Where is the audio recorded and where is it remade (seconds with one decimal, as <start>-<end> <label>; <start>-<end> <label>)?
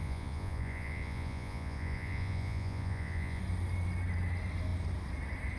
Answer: 0.0-3.4 remade; 3.4-5.6 recorded